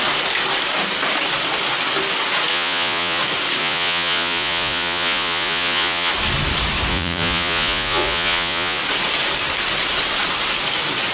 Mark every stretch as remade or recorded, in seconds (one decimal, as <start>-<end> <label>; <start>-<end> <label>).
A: 0.0-2.5 recorded; 2.5-3.2 remade; 3.2-3.6 recorded; 3.6-6.1 remade; 6.1-6.9 recorded; 6.9-8.8 remade; 8.8-11.1 recorded